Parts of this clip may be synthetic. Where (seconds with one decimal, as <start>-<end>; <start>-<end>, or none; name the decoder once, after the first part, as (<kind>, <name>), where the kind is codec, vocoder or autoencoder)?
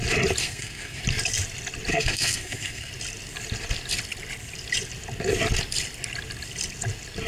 0.4-1.0 (codec, SNAC); 1.9-2.9